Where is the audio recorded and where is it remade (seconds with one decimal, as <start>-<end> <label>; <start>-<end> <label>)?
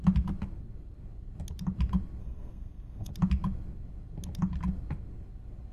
0.0-2.2 recorded; 2.2-3.1 remade; 3.1-5.7 recorded